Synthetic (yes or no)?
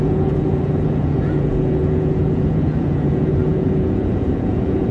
yes